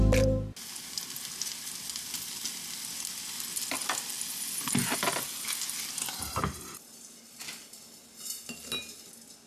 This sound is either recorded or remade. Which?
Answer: recorded